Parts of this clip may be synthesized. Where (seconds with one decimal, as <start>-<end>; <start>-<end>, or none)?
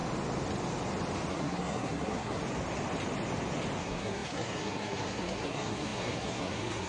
1.3-2.4; 3.8-6.9